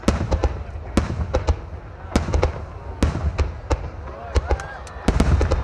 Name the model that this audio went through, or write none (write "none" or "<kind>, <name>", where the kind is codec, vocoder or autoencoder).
none